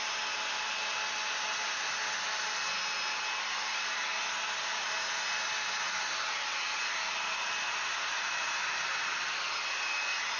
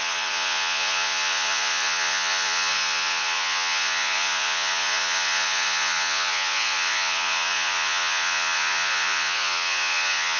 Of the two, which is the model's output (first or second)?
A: second